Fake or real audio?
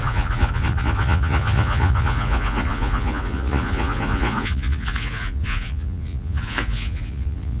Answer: fake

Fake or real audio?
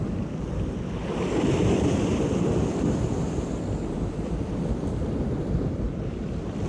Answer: real